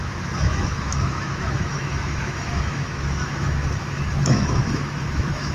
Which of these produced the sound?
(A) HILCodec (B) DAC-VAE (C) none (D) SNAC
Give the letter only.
B